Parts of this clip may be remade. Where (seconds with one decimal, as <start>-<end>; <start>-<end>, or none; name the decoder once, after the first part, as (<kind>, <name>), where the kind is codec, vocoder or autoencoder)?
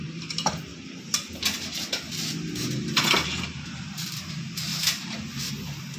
0.0-6.0 (vocoder, BigVGAN v2)